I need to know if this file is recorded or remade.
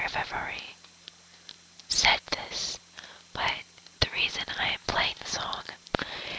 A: recorded